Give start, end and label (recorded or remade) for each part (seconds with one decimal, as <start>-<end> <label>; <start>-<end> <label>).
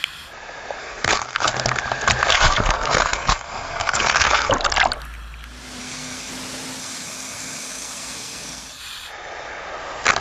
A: 0.0-0.8 recorded; 0.8-1.5 remade; 1.5-2.3 recorded; 2.3-4.5 remade; 4.5-5.8 recorded; 5.8-6.3 remade; 6.3-6.8 recorded; 6.8-8.8 remade; 8.8-10.2 recorded